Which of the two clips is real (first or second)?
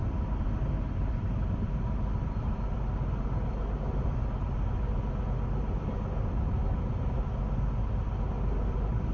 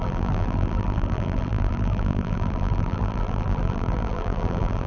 first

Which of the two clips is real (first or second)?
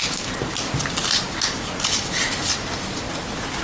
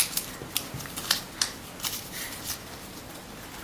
first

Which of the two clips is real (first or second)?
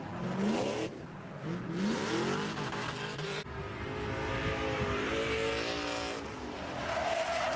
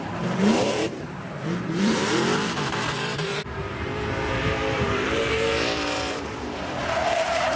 first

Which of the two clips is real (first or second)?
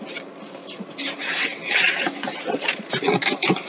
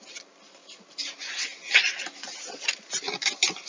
second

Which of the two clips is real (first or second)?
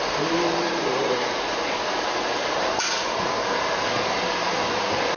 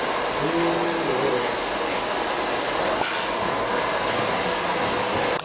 second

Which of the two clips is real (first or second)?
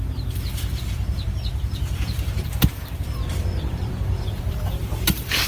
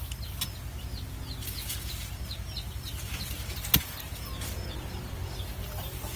second